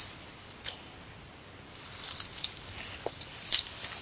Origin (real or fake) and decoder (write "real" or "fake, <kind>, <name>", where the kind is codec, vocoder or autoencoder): fake, vocoder, BigVGAN v2